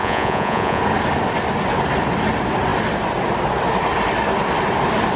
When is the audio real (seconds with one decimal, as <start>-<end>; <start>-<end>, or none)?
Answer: 0.8-5.2